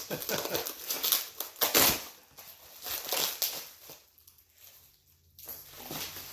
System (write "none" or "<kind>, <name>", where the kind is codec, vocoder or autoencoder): none